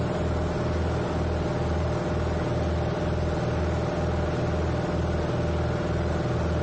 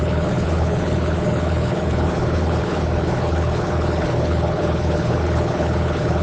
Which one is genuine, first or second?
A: first